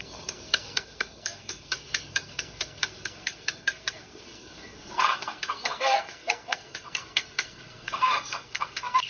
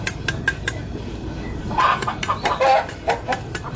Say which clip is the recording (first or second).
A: second